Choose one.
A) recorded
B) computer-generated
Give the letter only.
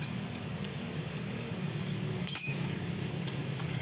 B